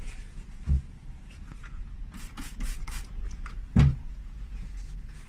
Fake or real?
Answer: fake